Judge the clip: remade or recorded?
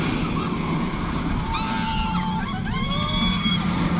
recorded